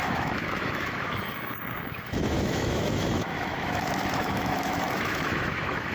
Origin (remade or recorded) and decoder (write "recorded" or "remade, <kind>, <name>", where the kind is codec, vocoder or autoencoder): remade, autoencoder, DAC-VAE